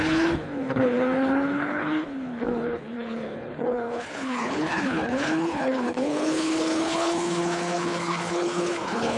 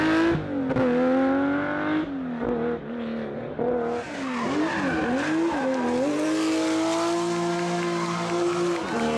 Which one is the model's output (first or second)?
first